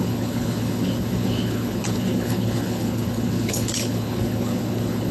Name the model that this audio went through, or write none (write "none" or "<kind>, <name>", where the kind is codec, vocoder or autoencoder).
codec, HILCodec